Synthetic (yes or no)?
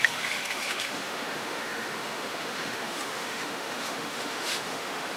yes